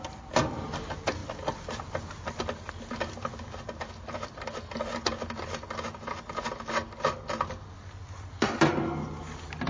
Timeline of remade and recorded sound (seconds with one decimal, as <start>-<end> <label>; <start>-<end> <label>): 0.0-9.7 recorded